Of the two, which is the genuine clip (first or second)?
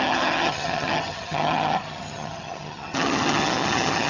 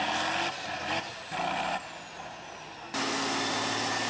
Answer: second